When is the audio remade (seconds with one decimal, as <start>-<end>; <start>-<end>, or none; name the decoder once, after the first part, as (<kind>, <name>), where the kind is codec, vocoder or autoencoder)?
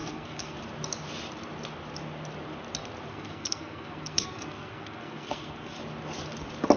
0.0-0.6 (codec, SNAC); 3.1-5.8